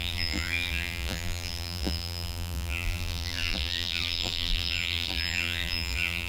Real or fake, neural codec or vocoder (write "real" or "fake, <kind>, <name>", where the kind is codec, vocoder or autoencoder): fake, vocoder, BigVGAN v2